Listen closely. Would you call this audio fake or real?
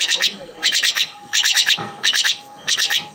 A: fake